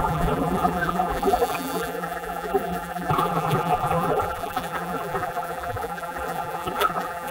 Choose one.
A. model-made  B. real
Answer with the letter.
A